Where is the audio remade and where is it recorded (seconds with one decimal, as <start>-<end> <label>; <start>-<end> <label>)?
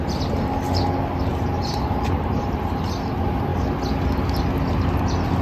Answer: 0.0-1.3 recorded; 1.3-2.8 remade; 2.8-5.4 recorded